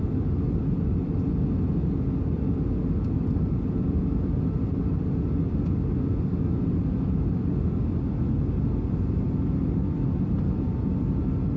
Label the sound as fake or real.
real